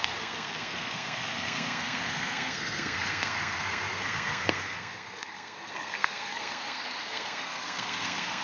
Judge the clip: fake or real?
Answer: fake